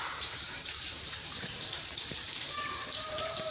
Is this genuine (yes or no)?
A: no